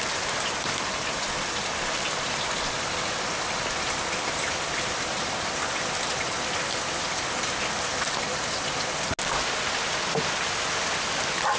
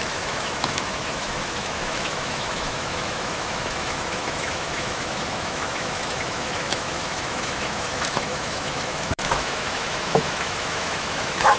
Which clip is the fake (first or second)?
second